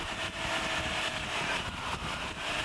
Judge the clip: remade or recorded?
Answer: remade